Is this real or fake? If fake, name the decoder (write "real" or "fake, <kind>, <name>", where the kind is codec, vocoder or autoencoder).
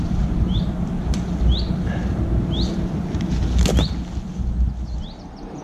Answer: real